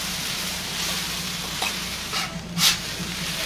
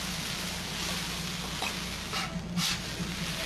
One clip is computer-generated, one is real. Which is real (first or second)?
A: second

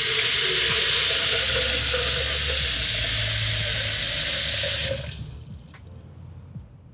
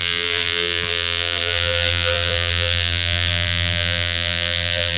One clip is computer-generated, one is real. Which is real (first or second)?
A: first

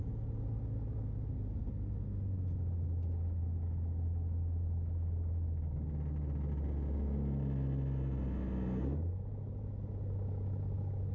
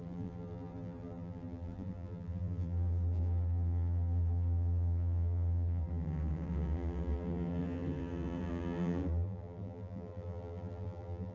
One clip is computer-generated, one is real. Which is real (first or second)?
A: first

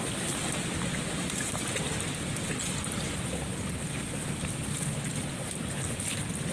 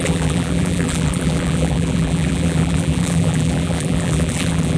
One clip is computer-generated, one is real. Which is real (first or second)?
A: first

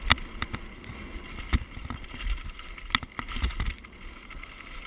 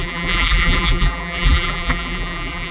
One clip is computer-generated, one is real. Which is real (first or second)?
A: first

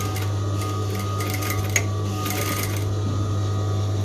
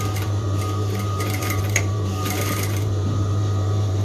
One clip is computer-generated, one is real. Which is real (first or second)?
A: first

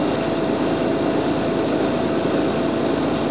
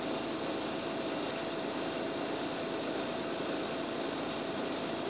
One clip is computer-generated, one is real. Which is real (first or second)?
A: first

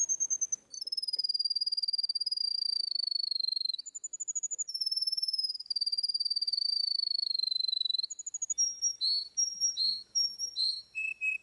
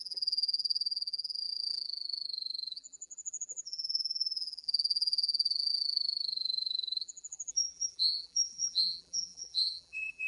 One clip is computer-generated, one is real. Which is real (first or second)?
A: first